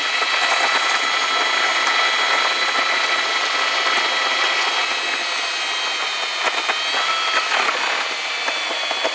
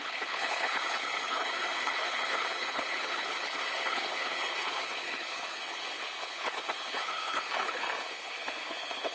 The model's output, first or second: second